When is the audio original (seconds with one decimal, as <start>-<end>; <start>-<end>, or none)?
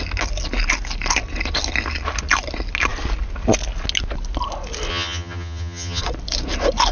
0.0-4.9; 6.0-6.9